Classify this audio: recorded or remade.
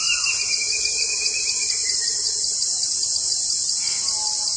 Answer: recorded